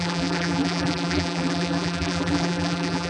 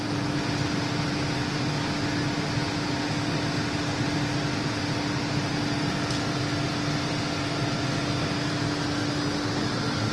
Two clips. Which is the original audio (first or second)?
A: second